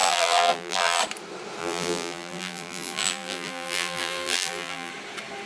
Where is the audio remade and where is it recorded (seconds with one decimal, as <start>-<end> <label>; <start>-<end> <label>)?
0.0-1.0 remade; 1.0-1.6 recorded; 1.6-4.9 remade; 4.9-5.5 recorded